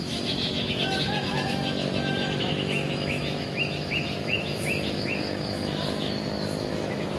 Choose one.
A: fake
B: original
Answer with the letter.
A